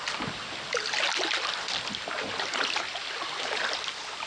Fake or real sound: real